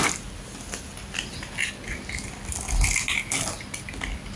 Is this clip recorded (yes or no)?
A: yes